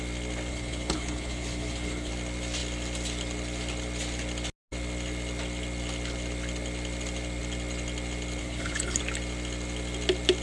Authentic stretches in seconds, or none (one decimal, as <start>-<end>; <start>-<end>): 0.0-0.5; 2.1-8.4; 9.0-10.4